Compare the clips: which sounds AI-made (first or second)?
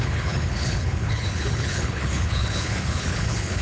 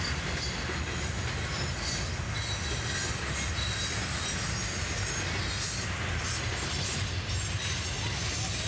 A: first